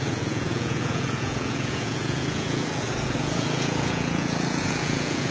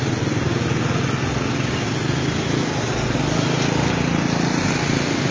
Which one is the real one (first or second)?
second